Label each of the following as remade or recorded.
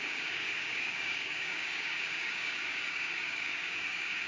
remade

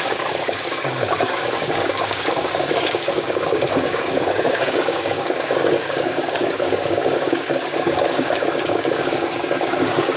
remade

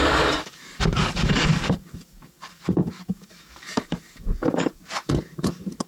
remade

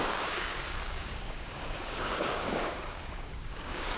remade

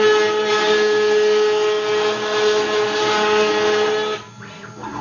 recorded